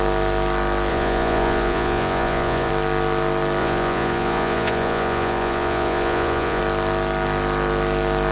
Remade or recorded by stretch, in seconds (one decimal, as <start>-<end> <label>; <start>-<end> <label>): 0.0-0.9 recorded; 0.9-2.7 remade; 2.7-3.6 recorded; 3.6-6.6 remade; 6.6-8.3 recorded